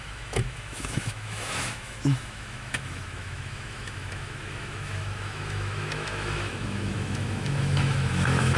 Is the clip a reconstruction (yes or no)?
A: yes